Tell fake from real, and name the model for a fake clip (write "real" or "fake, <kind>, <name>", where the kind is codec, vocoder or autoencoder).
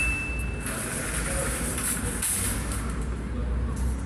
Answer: real